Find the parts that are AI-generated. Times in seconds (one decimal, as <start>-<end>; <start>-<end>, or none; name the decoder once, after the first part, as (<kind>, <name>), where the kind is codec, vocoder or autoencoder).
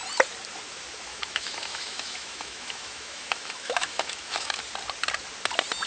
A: 1.1-4.6 (autoencoder, DAC-VAE)